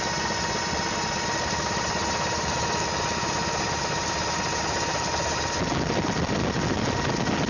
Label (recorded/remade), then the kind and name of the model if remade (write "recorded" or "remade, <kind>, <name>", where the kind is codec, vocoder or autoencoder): recorded